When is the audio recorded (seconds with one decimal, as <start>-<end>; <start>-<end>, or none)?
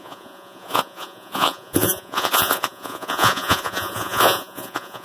none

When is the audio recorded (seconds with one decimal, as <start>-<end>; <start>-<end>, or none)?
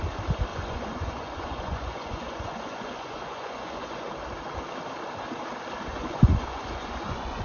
0.0-0.5; 4.1-5.9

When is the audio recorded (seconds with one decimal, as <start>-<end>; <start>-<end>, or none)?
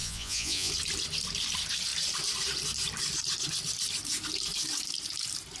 0.7-5.6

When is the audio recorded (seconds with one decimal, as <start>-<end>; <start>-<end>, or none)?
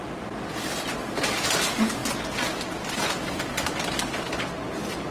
0.0-5.1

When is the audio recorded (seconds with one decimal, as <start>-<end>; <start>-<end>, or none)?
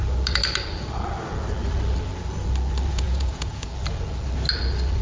0.0-2.9; 3.7-5.0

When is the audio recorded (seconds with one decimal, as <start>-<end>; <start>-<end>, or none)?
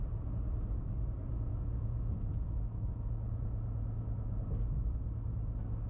0.0-1.2; 4.4-5.9